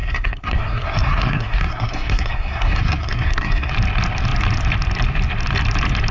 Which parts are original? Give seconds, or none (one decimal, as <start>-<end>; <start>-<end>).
3.7-6.1